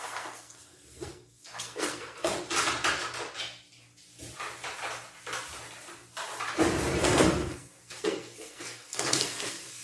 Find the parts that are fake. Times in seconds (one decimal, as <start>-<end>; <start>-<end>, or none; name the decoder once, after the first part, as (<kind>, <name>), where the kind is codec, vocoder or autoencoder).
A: 0.0-2.3 (codec, SNAC); 7.0-9.8